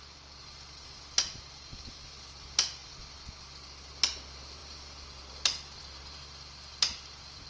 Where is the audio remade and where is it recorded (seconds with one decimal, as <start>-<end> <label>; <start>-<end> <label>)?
0.0-7.5 recorded